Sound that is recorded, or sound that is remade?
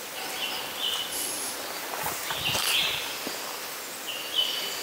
recorded